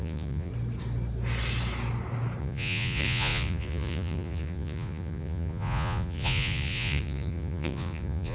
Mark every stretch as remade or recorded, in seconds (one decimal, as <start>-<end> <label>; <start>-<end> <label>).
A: 0.0-0.5 remade; 0.5-2.4 recorded; 2.4-8.3 remade